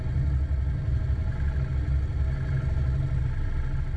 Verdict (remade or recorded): recorded